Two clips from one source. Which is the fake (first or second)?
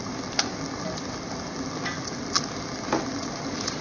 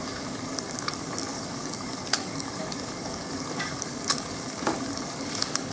second